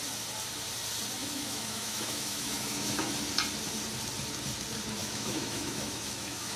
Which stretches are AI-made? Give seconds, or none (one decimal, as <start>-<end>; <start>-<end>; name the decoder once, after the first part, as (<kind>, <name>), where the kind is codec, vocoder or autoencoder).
1.2-3.1 (autoencoder, DAC-VAE); 5.0-6.6